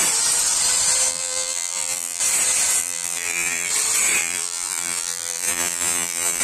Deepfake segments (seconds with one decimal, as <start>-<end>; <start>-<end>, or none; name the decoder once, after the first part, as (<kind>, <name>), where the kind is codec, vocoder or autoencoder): 1.1-2.2 (vocoder, BigVGAN v2); 2.8-3.7; 4.2-6.4